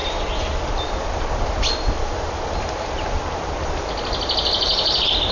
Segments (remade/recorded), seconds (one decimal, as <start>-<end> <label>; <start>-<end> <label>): 0.0-5.3 recorded